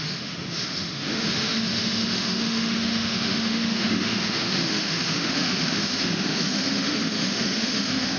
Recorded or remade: remade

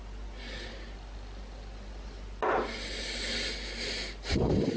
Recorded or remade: recorded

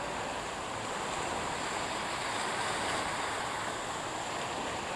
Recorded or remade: recorded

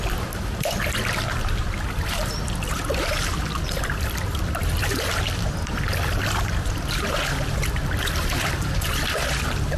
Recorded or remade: recorded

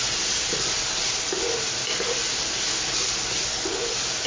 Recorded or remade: recorded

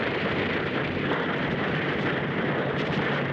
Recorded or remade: remade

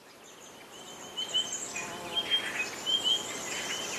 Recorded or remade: recorded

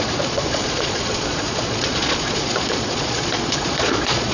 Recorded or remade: remade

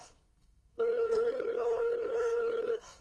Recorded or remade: remade